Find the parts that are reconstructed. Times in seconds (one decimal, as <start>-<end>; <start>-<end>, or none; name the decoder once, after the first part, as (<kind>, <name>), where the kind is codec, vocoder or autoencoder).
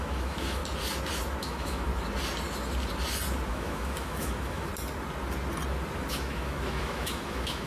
0.0-0.6 (autoencoder, DAC-VAE); 1.4-1.9; 3.5-4.7; 6.1-7.7